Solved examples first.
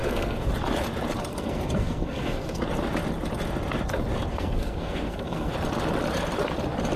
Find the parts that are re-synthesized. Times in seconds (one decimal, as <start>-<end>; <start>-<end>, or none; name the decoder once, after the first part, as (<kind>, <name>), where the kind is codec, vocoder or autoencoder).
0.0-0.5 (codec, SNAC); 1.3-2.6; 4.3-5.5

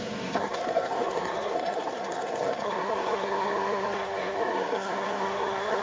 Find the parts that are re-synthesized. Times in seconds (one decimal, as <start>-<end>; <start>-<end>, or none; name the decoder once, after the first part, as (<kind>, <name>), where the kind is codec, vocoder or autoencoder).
0.0-5.8 (codec, SNAC)

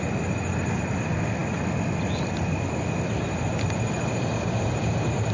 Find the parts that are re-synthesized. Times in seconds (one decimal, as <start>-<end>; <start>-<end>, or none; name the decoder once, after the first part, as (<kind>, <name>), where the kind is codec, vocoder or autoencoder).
none